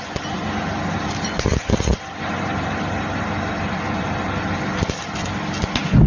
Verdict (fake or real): real